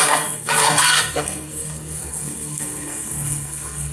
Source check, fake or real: fake